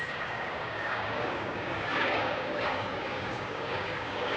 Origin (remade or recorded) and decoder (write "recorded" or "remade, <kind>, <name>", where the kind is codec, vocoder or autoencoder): remade, codec, DAC